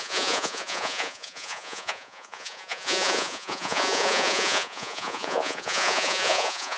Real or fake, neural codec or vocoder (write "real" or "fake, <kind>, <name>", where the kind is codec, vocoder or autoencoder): fake, vocoder, Vocos